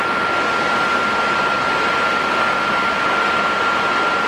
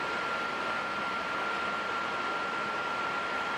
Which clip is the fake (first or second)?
second